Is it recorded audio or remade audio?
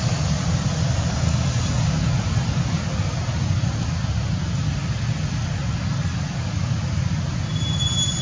recorded